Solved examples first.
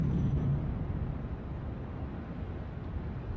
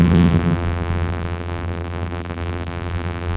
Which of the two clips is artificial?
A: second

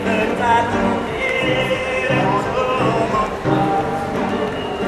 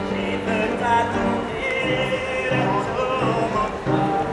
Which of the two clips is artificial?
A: first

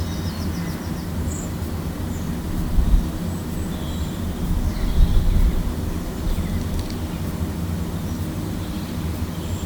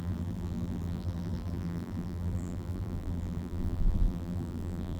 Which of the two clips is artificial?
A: second